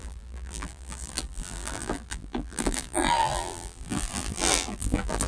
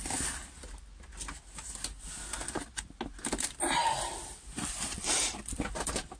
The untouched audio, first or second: second